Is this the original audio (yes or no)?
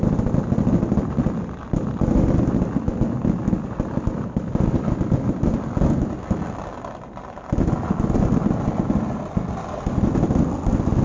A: yes